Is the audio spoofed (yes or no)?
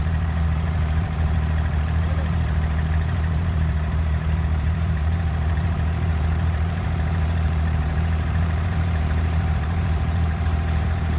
yes